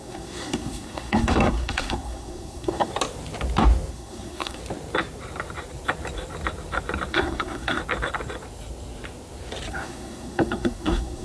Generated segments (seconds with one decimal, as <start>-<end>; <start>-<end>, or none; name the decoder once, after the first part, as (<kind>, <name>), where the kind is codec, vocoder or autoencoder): 0.0-2.9 (codec, SNAC); 3.9-4.6; 7.1-7.8; 9.7-11.2